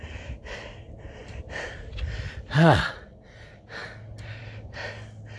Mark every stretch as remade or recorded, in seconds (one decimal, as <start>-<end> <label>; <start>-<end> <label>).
0.0-5.4 recorded